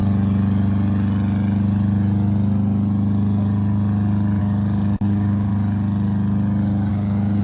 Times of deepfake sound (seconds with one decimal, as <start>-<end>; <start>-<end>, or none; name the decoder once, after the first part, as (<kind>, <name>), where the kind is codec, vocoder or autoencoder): 4.4-5.5 (codec, DAC); 6.9-7.4